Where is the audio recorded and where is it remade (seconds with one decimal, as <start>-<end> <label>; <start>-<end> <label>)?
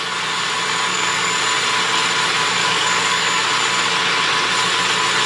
0.0-0.9 recorded; 0.9-1.4 remade; 1.4-2.6 recorded; 2.6-3.4 remade; 3.4-5.3 recorded